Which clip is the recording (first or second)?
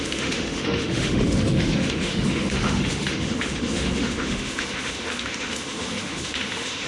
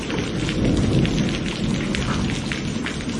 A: second